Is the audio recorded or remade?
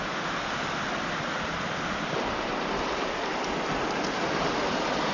recorded